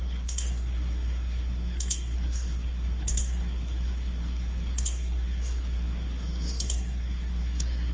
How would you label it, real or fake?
fake